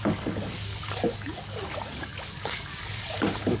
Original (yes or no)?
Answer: no